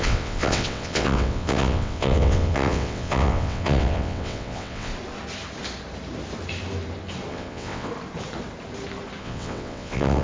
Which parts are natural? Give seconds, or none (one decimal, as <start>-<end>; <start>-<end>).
4.9-7.3; 7.9-9.2